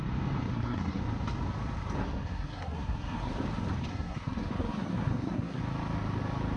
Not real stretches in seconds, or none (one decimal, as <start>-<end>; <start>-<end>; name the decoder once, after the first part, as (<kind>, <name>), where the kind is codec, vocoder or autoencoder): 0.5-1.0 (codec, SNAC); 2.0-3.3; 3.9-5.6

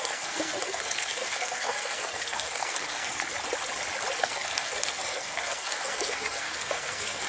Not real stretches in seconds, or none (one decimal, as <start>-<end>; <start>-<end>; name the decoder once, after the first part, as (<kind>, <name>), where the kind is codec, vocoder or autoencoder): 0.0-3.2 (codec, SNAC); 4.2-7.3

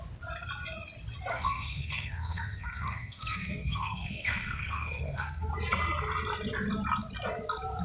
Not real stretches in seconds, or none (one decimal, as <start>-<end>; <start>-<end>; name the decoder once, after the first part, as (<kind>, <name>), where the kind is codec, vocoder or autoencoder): 1.3-5.5 (codec, SNAC)

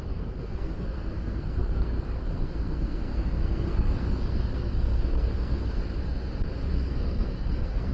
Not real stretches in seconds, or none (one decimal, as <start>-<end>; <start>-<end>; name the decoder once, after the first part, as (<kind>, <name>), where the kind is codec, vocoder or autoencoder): 0.0-5.8 (codec, SNAC); 6.7-7.9

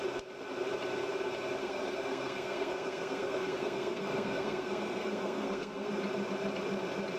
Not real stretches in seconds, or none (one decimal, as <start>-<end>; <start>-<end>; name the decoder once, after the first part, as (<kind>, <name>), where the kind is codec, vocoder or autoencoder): 1.6-5.9 (codec, SNAC)